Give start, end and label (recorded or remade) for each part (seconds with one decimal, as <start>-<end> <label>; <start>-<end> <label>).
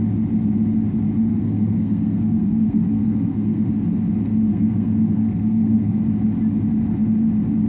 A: 0.0-1.3 recorded; 1.3-3.7 remade; 3.7-4.5 recorded; 4.5-6.0 remade; 6.0-7.7 recorded